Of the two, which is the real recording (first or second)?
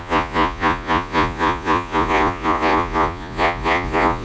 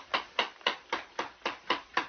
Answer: second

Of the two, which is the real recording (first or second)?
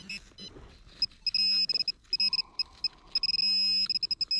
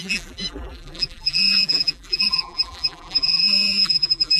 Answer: first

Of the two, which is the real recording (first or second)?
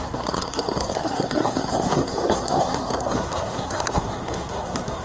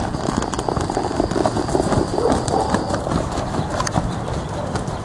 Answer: second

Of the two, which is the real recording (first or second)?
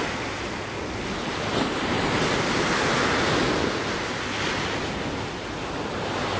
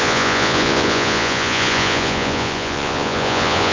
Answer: first